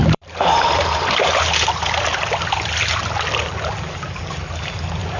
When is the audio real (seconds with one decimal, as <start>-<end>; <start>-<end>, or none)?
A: 1.8-3.4